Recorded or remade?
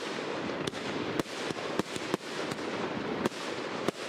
recorded